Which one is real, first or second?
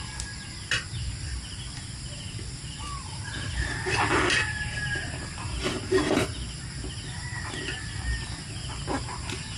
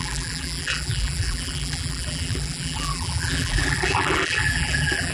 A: first